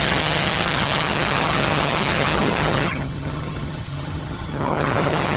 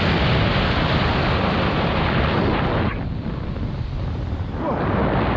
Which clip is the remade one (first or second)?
first